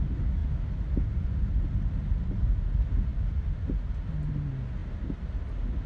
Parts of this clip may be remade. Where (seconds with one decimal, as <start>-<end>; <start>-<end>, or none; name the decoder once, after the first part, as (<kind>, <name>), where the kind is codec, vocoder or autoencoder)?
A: none